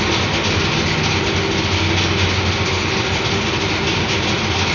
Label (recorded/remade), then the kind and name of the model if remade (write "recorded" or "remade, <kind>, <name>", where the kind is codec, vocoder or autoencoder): recorded